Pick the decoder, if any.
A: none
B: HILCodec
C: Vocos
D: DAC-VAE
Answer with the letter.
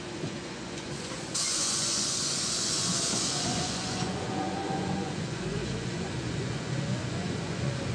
C